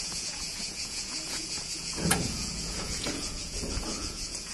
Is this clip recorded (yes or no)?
no